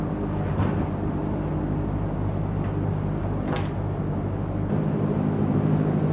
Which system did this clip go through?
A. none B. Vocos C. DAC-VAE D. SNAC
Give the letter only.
A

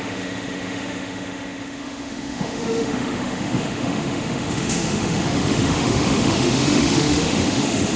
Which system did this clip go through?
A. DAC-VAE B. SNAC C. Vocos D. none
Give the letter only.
A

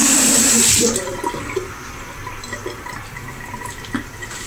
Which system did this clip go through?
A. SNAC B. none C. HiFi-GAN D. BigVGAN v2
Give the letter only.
D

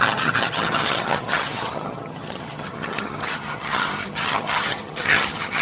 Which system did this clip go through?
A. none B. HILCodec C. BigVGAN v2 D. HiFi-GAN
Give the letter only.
D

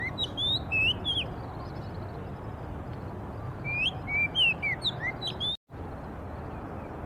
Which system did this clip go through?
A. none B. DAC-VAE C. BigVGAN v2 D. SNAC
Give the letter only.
A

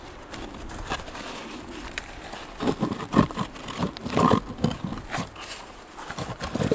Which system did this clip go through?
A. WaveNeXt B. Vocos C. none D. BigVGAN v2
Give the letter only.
D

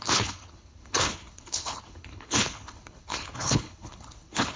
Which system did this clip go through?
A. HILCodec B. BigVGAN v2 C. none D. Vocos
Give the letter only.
A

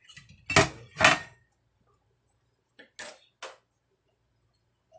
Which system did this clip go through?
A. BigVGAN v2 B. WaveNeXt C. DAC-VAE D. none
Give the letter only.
D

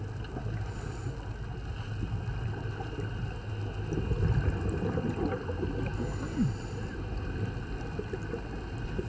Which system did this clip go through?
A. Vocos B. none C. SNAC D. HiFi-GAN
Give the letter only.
B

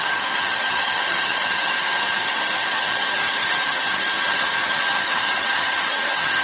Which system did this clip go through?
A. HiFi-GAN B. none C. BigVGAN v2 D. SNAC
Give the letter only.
A